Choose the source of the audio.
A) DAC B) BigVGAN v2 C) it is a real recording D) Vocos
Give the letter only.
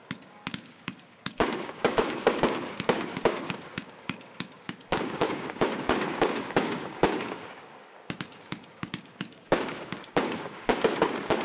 A